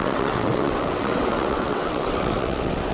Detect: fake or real fake